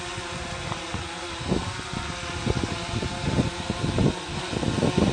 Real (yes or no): yes